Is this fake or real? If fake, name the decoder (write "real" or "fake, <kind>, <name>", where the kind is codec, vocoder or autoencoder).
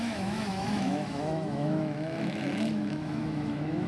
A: fake, autoencoder, DAC-VAE